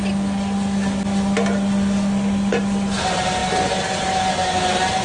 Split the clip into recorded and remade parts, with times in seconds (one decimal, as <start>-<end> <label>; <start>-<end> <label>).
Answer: 0.0-5.0 recorded